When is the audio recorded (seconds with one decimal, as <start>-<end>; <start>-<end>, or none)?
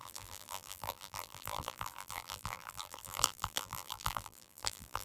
none